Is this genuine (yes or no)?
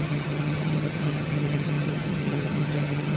no